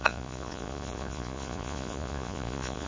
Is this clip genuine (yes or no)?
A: no